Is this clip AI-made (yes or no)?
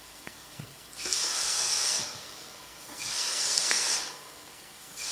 yes